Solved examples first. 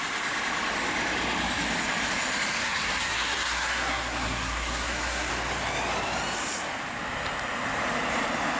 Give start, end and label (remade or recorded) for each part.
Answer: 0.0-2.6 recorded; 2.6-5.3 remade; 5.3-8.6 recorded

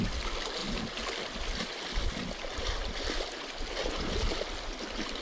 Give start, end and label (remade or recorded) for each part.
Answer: 0.0-5.2 recorded

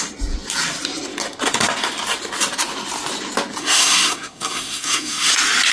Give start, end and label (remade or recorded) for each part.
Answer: 0.0-3.6 recorded; 3.6-5.3 remade; 5.3-5.7 recorded

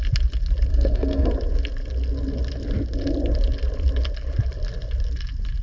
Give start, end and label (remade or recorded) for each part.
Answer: 0.0-0.7 recorded; 0.7-1.3 remade; 1.3-5.6 recorded

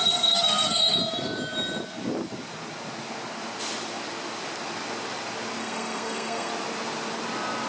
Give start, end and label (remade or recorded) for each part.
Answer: 0.0-1.0 remade; 1.0-5.6 recorded; 5.6-6.5 remade; 6.5-7.7 recorded